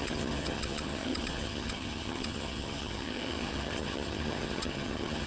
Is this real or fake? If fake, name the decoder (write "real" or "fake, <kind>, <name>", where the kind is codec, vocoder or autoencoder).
fake, vocoder, HiFi-GAN